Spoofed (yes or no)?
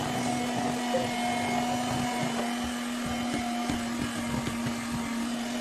no